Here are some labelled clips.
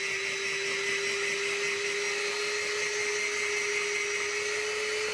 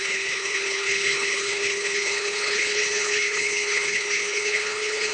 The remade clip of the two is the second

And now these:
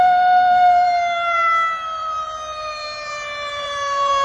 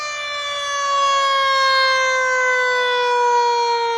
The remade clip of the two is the first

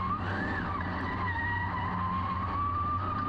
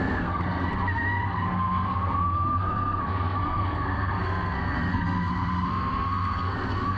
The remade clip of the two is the second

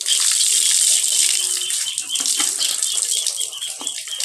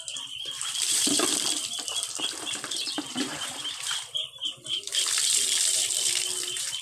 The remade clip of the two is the second